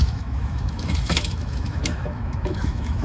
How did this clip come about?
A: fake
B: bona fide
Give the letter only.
A